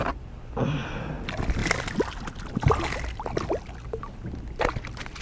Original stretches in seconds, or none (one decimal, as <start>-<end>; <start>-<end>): 0.0-5.2